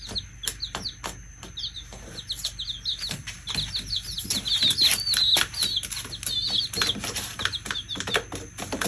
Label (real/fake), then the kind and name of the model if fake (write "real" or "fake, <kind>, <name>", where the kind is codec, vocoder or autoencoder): real